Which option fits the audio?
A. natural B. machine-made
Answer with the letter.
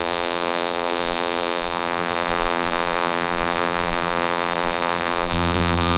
B